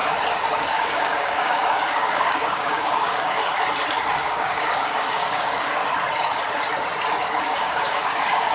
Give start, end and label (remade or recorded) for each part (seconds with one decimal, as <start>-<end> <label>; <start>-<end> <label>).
0.0-0.6 recorded; 0.6-3.4 remade; 3.4-4.1 recorded; 4.1-5.8 remade; 5.8-7.4 recorded; 7.4-8.5 remade